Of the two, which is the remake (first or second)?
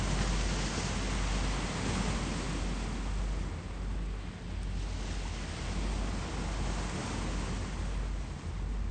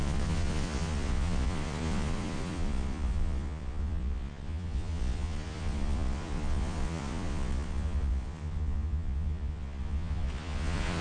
second